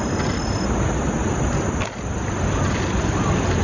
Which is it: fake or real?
real